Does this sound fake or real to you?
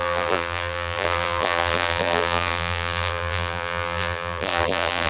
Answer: fake